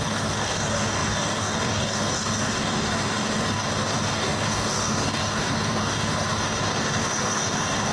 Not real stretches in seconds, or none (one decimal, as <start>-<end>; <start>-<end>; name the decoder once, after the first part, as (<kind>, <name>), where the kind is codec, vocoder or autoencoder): 0.0-7.9 (codec, DAC)